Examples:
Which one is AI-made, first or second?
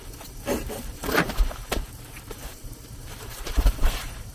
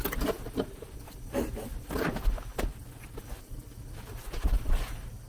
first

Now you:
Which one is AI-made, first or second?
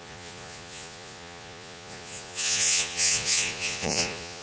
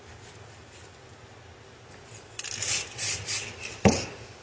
first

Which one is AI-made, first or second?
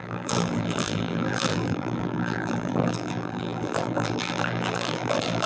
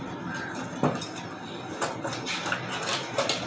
first